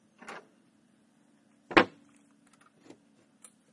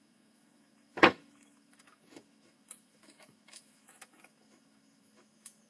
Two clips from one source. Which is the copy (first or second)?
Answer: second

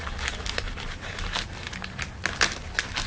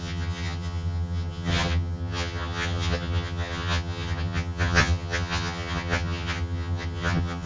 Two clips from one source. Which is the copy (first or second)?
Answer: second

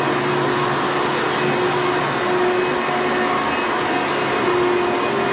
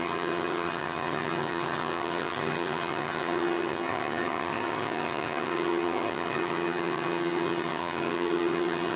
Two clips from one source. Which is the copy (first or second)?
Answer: second